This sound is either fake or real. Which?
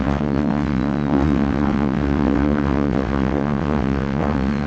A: fake